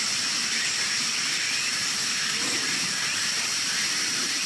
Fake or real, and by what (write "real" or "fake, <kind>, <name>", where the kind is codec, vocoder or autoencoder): real